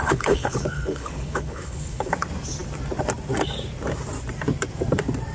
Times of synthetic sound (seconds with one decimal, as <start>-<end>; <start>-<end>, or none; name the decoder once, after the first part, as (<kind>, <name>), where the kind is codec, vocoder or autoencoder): 0.0-2.1 (codec, HILCodec)